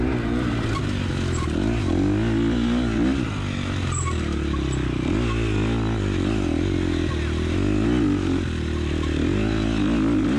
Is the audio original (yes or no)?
yes